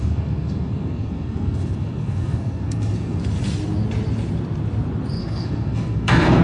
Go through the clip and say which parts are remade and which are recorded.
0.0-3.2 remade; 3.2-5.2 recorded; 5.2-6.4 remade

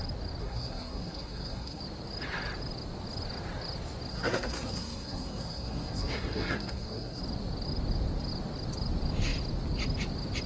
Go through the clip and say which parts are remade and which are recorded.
0.0-0.4 recorded; 0.4-1.8 remade; 1.8-4.1 recorded; 4.1-7.2 remade; 7.2-10.5 recorded